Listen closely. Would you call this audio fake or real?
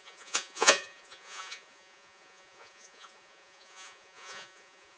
fake